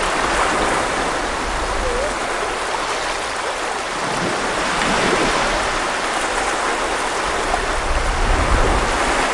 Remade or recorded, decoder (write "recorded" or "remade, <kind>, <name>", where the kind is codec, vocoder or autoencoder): recorded